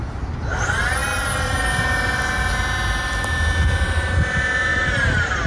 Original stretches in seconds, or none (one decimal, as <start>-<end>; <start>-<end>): 0.0-4.7